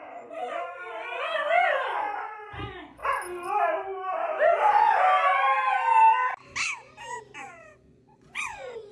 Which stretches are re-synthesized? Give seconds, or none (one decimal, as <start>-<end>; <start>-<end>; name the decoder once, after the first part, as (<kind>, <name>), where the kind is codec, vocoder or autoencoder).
0.0-3.0 (vocoder, Vocos); 7.5-8.9